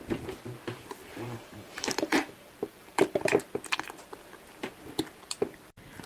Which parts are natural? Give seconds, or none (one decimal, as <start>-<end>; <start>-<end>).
0.0-1.0; 3.2-6.1